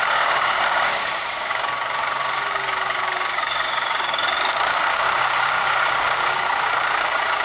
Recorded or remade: remade